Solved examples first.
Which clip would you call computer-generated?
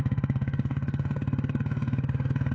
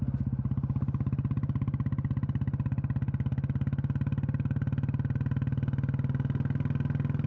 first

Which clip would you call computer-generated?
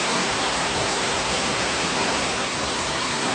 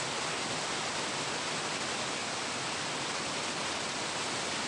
first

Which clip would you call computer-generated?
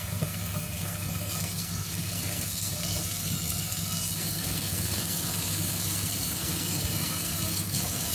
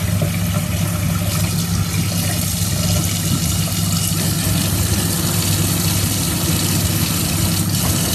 first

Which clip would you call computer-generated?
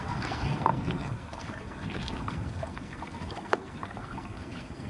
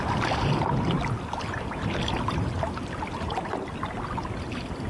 first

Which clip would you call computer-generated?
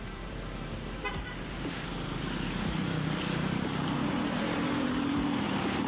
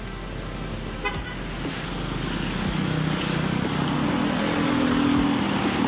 first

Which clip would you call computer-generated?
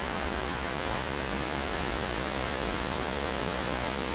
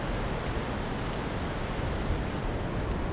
first